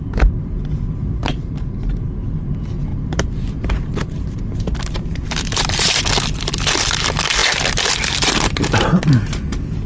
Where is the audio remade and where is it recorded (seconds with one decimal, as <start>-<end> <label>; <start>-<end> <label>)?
0.0-1.2 recorded; 1.2-1.9 remade; 1.9-2.9 recorded; 2.9-6.0 remade; 6.0-9.9 recorded